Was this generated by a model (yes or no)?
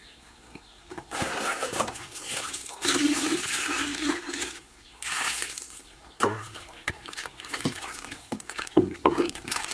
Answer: yes